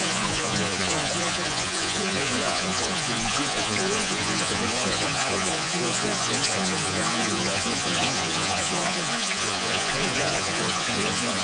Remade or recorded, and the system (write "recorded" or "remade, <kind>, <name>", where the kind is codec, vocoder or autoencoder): remade, vocoder, Vocos